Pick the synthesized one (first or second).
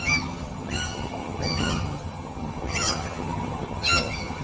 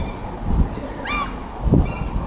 first